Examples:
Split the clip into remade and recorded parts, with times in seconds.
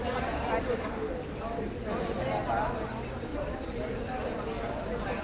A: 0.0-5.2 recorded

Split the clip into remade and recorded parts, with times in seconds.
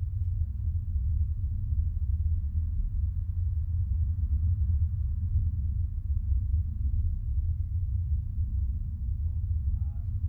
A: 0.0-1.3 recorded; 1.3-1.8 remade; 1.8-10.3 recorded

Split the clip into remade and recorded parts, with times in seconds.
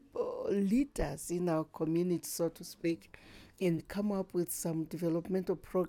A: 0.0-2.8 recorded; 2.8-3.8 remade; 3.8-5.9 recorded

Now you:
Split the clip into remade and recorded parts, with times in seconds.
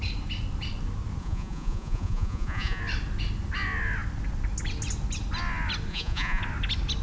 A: 0.0-1.2 recorded; 1.2-2.8 remade; 2.8-5.9 recorded; 5.9-6.4 remade; 6.4-7.0 recorded